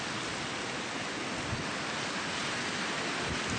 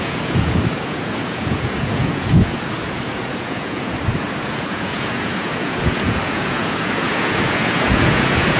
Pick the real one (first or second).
first